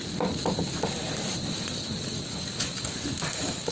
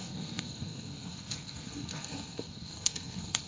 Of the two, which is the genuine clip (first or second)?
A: first